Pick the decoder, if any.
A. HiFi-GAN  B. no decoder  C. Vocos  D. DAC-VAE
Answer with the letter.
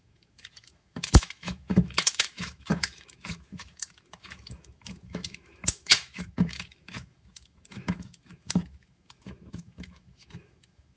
D